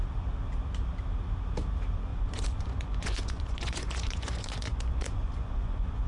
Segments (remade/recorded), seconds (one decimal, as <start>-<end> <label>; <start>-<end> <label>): 0.0-2.1 recorded; 2.1-6.1 remade